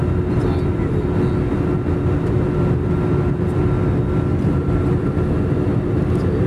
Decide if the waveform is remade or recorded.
recorded